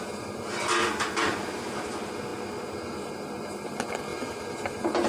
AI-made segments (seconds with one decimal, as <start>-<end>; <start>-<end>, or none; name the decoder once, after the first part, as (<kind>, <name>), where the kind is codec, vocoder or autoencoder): 0.8-1.4 (vocoder, BigVGAN v2)